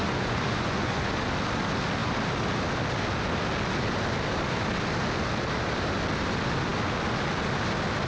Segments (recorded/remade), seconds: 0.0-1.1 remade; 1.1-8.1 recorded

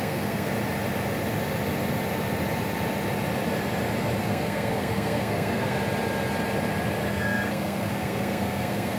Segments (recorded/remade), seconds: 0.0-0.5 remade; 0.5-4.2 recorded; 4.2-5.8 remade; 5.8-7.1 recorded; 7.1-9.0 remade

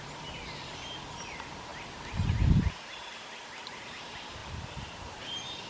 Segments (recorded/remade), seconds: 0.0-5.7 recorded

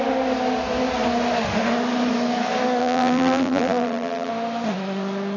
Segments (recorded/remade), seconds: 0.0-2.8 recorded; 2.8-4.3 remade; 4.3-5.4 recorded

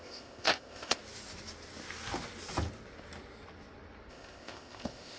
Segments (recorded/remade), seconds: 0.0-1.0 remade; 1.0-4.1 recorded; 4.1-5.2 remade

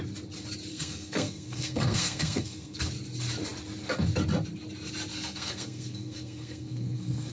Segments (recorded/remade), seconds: 0.0-0.7 recorded; 0.7-2.8 remade; 2.8-5.1 recorded; 5.1-7.3 remade